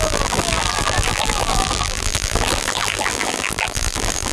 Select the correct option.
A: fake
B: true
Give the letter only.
A